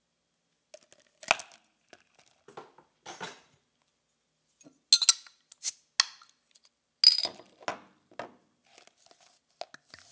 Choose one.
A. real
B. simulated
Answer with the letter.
A